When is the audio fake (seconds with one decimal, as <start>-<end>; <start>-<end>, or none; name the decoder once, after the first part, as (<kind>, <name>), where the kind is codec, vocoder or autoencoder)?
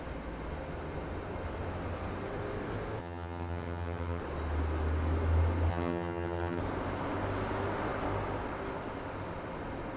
3.0-4.2 (vocoder, HiFi-GAN); 5.7-6.6